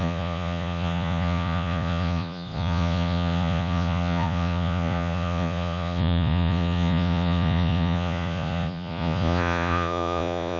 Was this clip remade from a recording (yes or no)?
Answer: yes